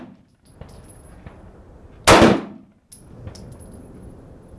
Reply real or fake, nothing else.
real